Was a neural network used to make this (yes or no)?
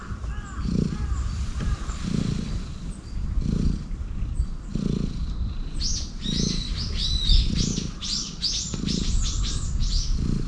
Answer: yes